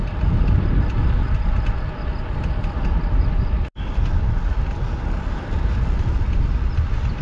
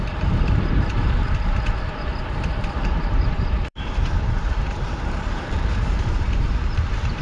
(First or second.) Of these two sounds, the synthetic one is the second